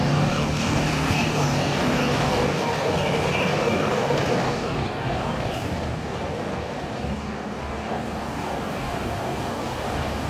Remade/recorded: remade